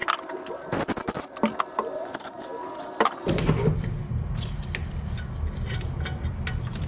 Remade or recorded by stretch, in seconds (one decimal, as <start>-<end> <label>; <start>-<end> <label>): 0.0-6.9 recorded